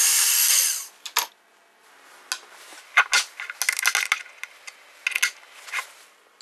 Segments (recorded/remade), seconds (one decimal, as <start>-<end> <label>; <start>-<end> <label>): 0.0-6.4 recorded